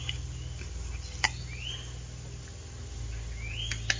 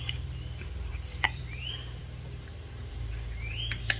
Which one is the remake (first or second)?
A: second